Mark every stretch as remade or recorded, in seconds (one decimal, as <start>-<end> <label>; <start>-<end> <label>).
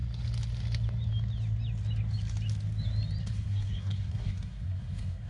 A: 0.0-3.2 recorded; 3.2-5.3 remade